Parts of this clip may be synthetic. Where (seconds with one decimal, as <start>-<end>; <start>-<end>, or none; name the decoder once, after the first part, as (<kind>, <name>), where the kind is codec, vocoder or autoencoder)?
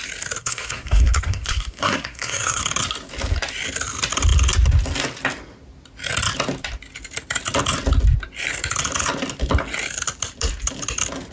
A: 0.4-2.6 (codec, SNAC)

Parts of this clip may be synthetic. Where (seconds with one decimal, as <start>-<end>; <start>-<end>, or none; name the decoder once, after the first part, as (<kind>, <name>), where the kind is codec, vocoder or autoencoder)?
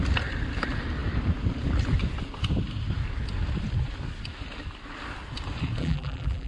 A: 5.8-6.5 (vocoder, BigVGAN v2)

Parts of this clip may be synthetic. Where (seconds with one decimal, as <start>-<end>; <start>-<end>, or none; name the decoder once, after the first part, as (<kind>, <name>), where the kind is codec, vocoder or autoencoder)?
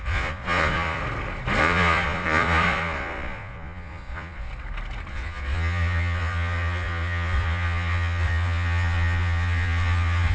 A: 0.0-1.0 (vocoder, Vocos); 1.6-4.5; 5.1-10.3